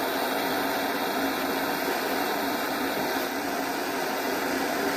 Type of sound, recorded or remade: recorded